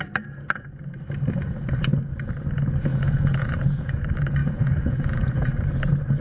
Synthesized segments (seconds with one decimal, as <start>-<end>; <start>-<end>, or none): 2.9-4.0; 4.4-5.5